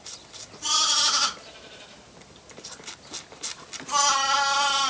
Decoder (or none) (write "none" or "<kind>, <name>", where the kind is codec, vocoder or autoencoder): none